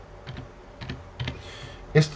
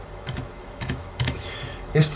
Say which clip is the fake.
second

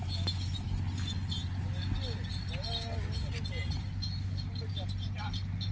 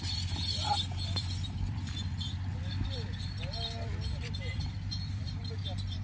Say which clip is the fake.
second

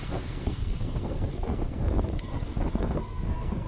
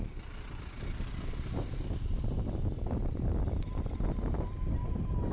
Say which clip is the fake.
first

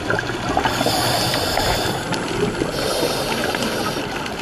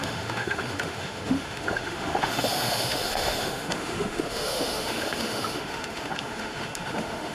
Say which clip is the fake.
second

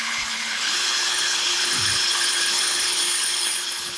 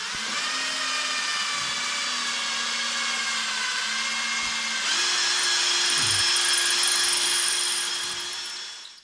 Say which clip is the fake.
first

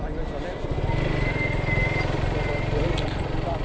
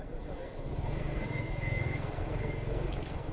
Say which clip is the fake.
second